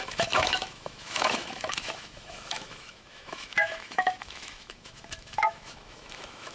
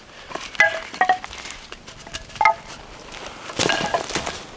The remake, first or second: first